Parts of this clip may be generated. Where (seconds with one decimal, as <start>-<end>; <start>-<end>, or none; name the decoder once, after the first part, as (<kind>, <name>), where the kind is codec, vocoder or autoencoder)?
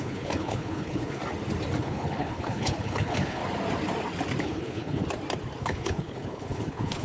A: 0.0-1.2 (codec, HILCodec); 1.8-3.4; 4.4-5.0; 5.6-7.0